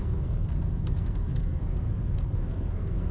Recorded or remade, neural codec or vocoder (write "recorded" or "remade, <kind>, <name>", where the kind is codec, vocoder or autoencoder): remade, codec, SNAC